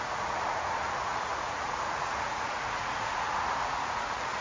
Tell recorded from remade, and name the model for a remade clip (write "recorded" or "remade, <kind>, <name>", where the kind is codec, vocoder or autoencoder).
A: remade, vocoder, Vocos